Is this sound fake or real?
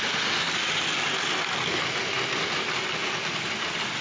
real